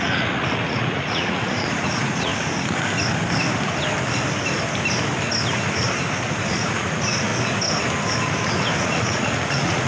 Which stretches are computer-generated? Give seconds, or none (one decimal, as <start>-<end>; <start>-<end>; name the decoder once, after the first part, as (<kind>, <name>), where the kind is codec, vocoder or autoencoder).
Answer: 0.0-2.3 (vocoder, Vocos); 6.5-7.3; 8.8-9.9